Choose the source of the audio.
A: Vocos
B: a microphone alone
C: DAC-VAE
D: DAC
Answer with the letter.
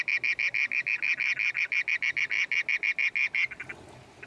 B